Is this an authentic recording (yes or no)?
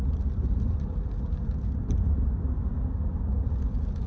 yes